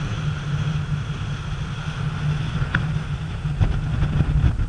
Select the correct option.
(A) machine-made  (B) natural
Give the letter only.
B